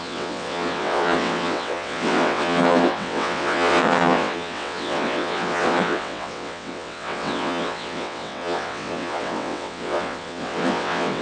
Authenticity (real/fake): fake